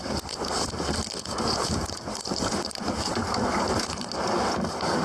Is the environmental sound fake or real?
real